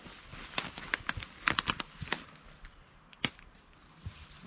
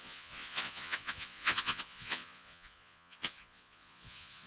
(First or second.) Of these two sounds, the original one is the first